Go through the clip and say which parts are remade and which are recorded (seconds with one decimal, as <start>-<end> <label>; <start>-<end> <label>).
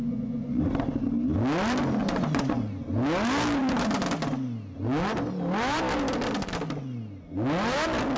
0.0-0.6 remade; 0.6-2.0 recorded; 2.0-2.7 remade; 2.7-8.2 recorded